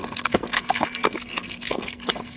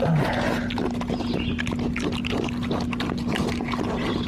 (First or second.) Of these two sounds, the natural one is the second